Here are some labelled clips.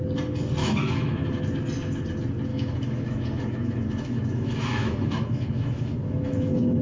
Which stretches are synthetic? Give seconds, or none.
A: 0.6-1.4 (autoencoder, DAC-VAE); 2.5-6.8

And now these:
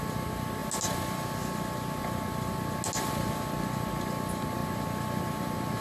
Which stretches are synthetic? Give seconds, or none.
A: none

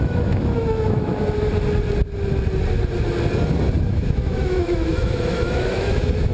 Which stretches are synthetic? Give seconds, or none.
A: 0.0-1.1 (autoencoder, DAC-VAE); 3.9-6.3